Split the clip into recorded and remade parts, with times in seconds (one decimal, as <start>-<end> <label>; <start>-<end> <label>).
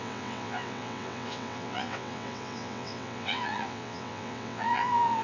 0.0-5.2 remade